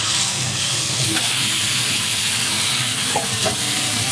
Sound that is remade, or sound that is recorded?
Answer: remade